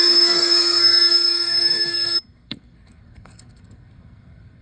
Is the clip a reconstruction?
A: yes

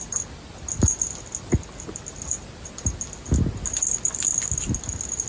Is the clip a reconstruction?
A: no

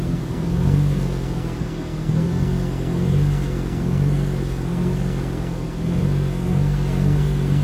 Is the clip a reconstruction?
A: yes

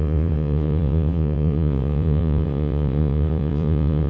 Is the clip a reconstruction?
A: yes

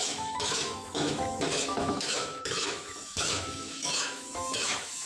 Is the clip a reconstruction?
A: yes